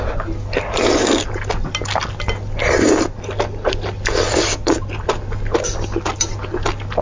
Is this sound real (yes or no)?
yes